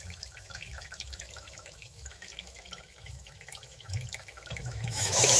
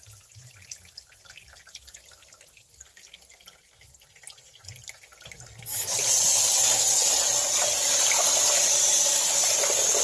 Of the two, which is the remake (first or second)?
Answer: first